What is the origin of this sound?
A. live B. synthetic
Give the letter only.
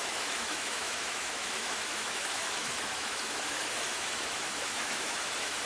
B